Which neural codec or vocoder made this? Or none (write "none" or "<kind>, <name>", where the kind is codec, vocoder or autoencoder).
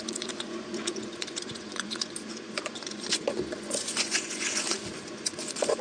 vocoder, Vocos